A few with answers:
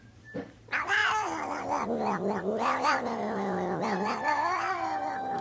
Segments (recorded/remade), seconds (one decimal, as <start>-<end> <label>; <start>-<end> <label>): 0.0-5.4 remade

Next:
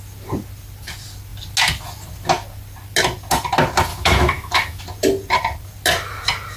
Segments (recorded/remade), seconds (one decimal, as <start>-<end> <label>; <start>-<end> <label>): 0.0-3.9 recorded; 3.9-4.8 remade; 4.8-6.6 recorded

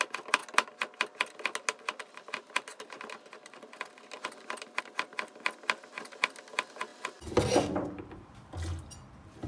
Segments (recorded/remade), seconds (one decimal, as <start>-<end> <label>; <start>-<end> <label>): 0.0-9.5 recorded

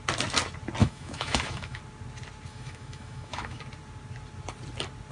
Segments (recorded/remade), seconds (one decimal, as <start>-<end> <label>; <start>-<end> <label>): 0.0-0.8 recorded; 0.8-1.8 remade; 1.8-2.5 recorded; 2.5-3.6 remade; 3.6-5.1 recorded

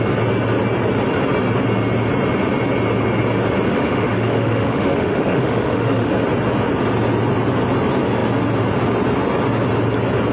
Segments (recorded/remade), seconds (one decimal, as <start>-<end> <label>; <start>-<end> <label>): 0.0-3.7 recorded; 3.7-6.1 remade; 6.1-10.3 recorded

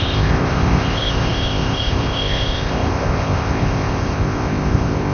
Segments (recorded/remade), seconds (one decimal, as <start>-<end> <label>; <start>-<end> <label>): 0.0-5.1 remade